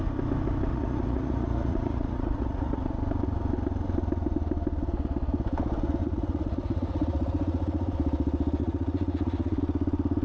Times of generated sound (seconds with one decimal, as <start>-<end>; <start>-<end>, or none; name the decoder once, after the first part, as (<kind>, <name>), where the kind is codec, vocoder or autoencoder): 0.7-3.0 (vocoder, Vocos); 6.0-7.9; 8.6-9.6